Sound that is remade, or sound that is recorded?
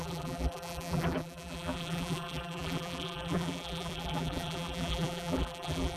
remade